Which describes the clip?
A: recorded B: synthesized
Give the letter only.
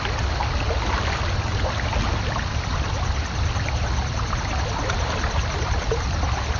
A